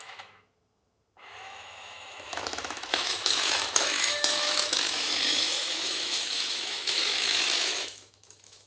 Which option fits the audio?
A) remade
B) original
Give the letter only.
A